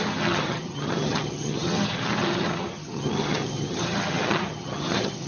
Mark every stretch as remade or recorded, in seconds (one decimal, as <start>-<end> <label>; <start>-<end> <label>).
0.0-5.3 remade